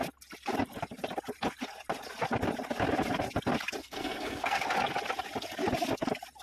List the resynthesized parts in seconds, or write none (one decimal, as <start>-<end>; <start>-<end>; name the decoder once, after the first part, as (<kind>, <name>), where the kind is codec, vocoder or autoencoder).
3.8-4.6 (codec, SNAC)